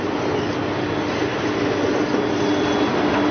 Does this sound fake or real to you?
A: real